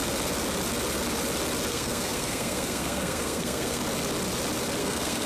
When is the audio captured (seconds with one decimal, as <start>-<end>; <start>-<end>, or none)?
0.0-1.7; 3.8-4.8